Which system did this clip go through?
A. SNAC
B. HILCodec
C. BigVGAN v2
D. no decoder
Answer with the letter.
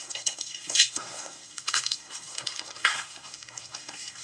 A